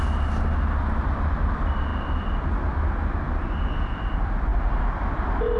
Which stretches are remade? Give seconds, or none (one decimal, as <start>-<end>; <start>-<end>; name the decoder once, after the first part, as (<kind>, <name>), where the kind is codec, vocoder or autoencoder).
none